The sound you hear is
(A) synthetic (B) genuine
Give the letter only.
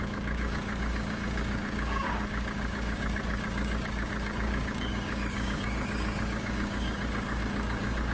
A